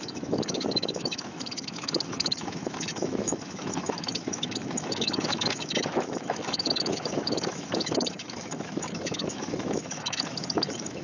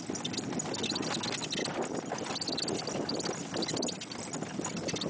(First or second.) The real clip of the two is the second